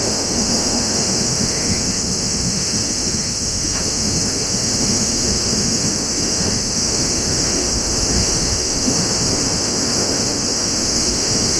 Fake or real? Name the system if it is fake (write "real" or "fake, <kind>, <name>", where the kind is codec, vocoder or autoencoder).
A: fake, autoencoder, DAC-VAE